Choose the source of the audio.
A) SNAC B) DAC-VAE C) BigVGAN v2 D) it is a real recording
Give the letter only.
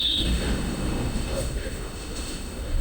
B